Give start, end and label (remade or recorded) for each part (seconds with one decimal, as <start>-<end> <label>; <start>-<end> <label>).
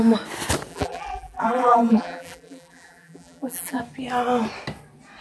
0.0-0.7 recorded; 0.7-3.8 remade; 3.8-5.2 recorded